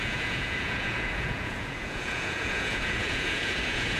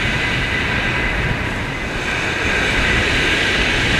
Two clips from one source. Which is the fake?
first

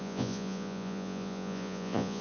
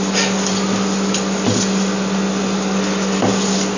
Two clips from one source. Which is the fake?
first